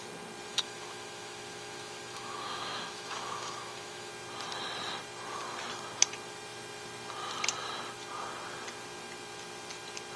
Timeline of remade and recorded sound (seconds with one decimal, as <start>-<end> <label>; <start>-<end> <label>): 0.0-0.5 recorded; 0.5-4.1 remade; 4.1-10.2 recorded